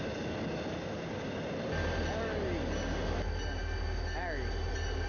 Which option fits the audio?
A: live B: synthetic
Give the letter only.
A